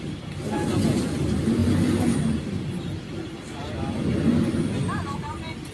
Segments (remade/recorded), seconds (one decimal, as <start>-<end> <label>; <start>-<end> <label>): 0.0-5.7 recorded